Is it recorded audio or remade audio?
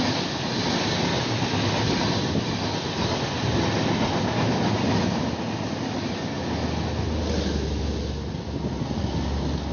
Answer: recorded